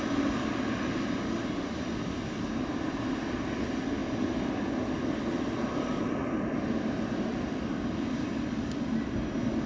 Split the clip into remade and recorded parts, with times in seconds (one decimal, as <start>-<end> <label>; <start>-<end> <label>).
0.0-9.7 recorded